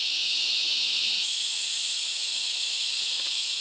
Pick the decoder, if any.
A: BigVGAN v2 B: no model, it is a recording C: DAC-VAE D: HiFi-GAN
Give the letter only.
C